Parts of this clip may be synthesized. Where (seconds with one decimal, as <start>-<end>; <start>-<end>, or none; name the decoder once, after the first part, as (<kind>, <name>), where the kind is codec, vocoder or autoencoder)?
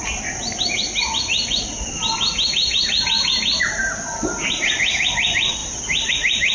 none